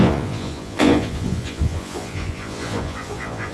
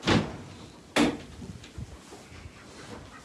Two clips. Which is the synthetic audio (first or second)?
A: first